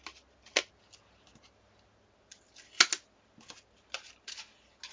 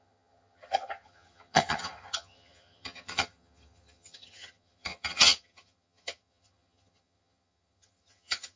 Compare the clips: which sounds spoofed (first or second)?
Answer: second